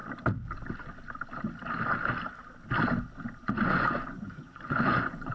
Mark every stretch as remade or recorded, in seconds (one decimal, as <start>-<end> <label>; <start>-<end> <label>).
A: 0.0-3.4 recorded; 3.4-5.3 remade

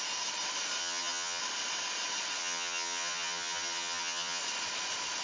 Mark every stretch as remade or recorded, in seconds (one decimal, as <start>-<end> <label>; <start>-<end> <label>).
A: 0.0-0.8 recorded; 0.8-1.4 remade; 1.4-2.4 recorded; 2.4-4.4 remade; 4.4-5.2 recorded

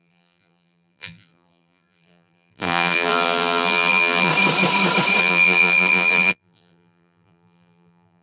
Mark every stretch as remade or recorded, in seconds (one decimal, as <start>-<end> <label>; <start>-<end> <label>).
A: 0.0-4.3 remade; 4.3-5.2 recorded; 5.2-8.2 remade